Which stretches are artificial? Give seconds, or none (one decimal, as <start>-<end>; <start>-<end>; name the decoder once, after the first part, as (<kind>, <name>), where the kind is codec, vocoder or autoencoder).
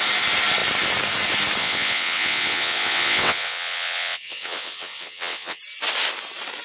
1.6-5.6 (vocoder, WaveNeXt)